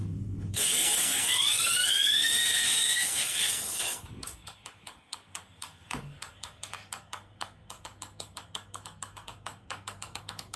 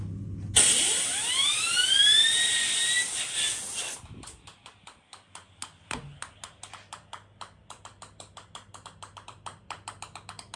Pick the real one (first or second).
second